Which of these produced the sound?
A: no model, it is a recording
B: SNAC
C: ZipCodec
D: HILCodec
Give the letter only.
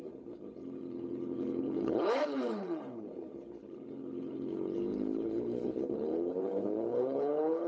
D